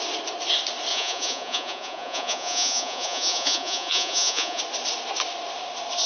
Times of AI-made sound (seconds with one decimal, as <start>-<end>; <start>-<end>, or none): 0.9-4.6